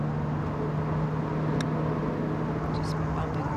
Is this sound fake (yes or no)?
no